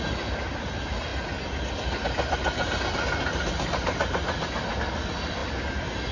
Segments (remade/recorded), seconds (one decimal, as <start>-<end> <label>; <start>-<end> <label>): 0.0-6.1 recorded